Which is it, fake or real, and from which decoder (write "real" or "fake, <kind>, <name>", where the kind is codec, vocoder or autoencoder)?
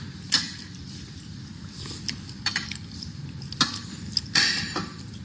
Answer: real